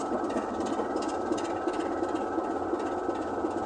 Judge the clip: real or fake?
real